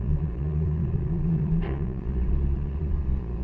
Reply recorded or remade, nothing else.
remade